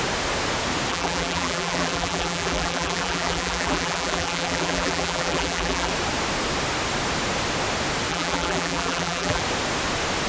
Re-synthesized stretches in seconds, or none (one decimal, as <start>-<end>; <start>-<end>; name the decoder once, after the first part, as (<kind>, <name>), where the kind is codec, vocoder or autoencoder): 0.9-5.9 (vocoder, BigVGAN v2); 8.1-9.4